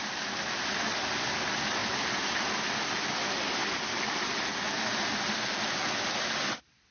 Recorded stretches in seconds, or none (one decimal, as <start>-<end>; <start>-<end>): 0.0-6.9